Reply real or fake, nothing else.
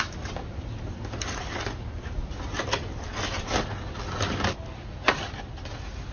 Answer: real